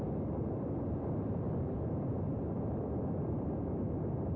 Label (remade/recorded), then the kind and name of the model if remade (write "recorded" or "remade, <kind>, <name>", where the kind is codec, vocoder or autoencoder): recorded